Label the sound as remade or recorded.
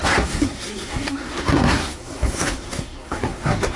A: remade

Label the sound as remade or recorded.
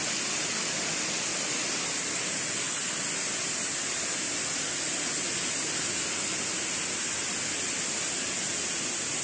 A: recorded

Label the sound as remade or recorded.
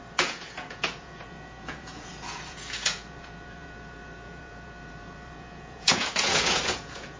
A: remade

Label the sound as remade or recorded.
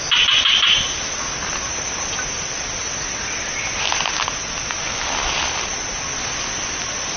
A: recorded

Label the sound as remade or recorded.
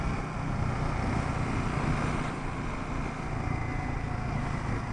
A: recorded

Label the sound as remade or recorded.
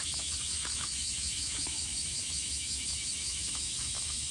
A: remade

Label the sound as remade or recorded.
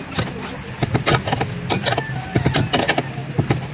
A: recorded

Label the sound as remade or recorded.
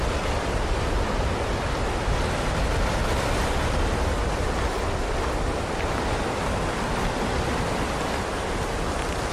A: recorded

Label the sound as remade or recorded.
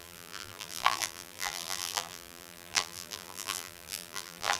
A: remade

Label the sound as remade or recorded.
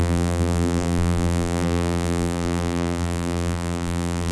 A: remade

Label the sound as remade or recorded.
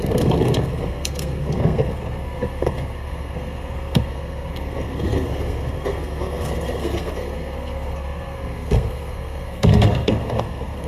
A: remade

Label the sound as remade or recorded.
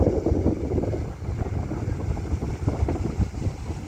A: recorded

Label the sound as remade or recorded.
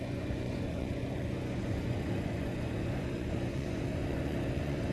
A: remade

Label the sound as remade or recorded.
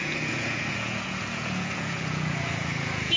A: remade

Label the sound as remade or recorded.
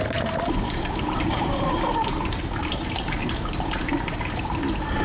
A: remade